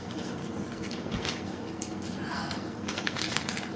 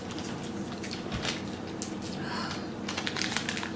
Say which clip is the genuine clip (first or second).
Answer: second